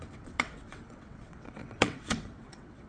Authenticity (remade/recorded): remade